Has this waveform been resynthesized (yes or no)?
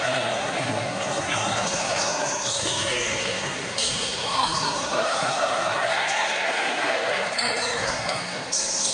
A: yes